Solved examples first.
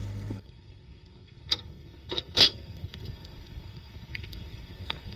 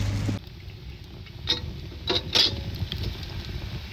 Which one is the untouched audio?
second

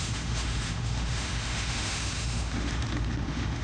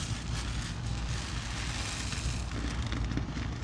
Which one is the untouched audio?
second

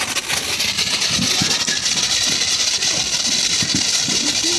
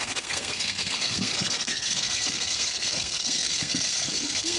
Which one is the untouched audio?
first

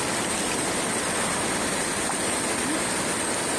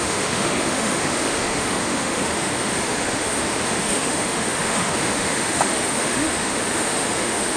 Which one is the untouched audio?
first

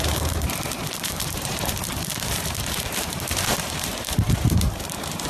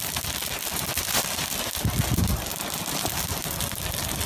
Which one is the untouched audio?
second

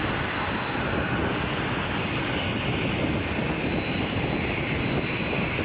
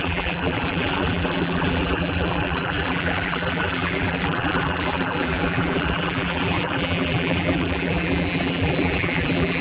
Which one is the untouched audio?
first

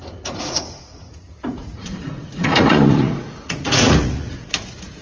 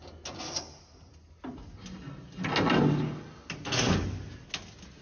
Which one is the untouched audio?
second